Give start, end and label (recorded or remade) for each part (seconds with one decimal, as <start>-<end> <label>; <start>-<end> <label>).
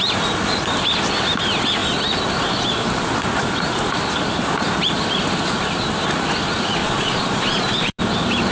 0.0-6.8 recorded; 6.8-8.0 remade; 8.0-8.5 recorded